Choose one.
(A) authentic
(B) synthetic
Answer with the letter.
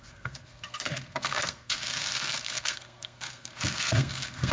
B